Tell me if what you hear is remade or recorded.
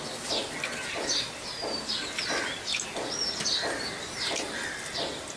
recorded